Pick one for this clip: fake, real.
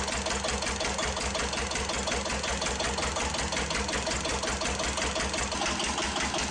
real